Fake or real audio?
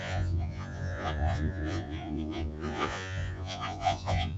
fake